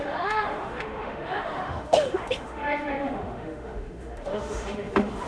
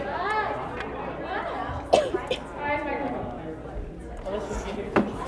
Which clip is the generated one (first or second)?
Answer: first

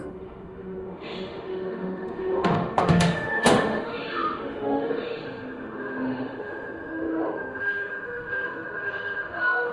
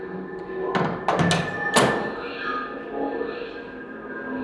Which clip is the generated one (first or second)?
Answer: first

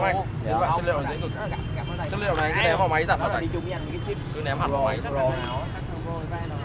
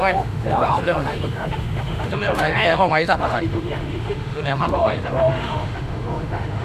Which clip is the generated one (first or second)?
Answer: second